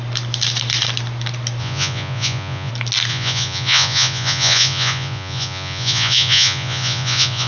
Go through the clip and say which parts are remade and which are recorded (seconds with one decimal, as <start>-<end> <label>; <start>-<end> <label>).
0.0-1.6 recorded; 1.6-2.7 remade; 2.7-3.1 recorded; 3.1-7.5 remade